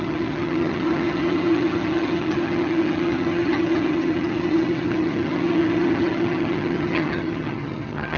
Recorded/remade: remade